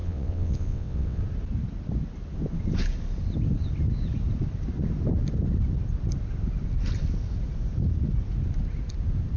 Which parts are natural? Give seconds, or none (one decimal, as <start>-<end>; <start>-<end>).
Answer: 1.2-9.4